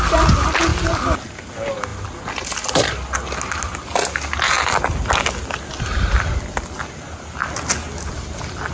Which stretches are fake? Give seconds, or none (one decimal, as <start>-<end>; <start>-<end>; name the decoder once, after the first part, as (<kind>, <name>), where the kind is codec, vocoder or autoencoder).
none